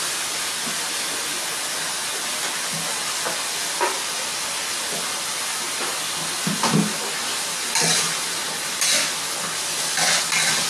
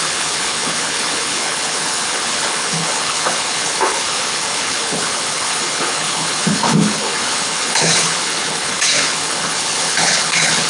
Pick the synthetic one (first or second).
second